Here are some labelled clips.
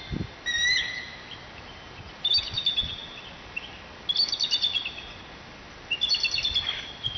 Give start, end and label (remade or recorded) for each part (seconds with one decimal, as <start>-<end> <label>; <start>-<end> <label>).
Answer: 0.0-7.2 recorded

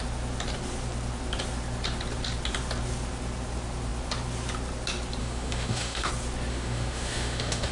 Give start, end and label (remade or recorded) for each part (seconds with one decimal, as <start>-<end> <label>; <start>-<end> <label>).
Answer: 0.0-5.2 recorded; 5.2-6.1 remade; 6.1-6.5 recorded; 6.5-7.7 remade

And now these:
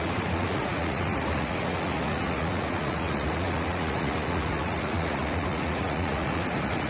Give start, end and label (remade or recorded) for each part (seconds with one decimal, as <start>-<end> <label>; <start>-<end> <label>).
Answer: 0.0-6.9 remade